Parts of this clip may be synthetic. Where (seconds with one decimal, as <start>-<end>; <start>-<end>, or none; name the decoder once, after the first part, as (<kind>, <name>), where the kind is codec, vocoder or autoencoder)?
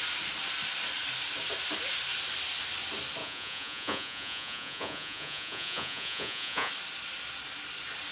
3.2-6.7 (vocoder, Vocos)